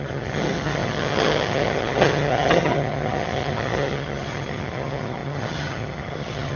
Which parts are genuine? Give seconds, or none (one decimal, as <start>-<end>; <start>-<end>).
none